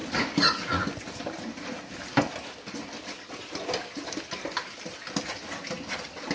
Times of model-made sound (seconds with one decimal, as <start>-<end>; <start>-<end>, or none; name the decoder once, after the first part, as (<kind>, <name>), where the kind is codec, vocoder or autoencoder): none